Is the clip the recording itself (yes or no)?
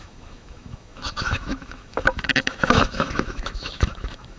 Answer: no